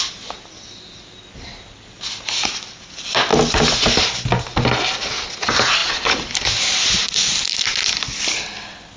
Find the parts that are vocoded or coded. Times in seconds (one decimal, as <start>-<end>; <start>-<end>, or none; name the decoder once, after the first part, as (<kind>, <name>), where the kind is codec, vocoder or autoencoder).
none